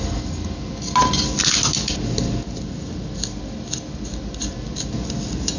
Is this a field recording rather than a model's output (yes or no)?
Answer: yes